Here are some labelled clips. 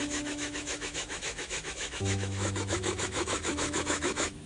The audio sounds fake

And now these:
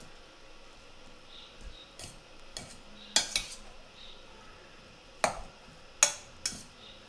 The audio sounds real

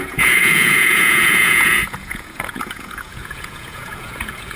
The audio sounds fake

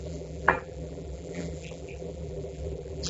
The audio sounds fake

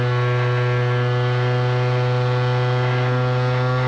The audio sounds real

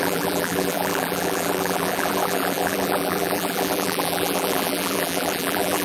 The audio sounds fake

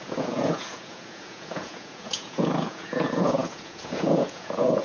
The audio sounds fake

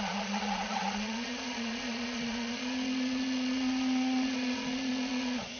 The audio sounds fake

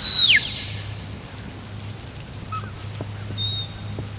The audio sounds real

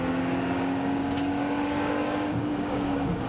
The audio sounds fake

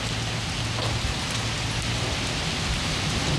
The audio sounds real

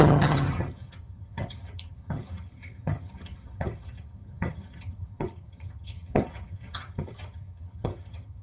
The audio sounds fake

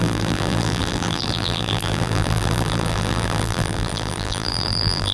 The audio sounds fake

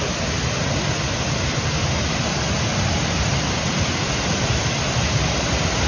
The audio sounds real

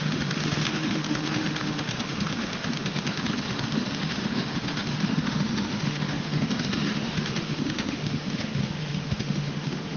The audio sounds fake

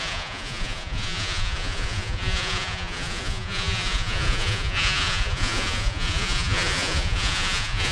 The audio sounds fake